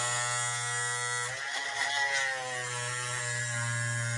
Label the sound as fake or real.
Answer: real